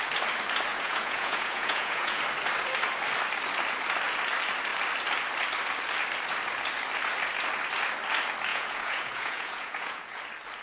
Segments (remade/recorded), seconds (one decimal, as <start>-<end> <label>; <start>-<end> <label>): 0.0-0.7 recorded; 0.7-2.2 remade; 2.2-8.5 recorded; 8.5-10.2 remade; 10.2-10.6 recorded